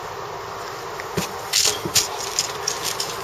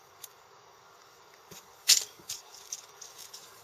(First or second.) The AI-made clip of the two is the second